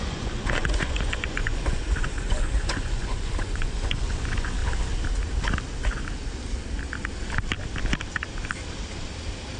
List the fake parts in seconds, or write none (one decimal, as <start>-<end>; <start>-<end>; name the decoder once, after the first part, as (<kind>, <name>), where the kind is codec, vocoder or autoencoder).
0.0-4.6 (vocoder, Vocos)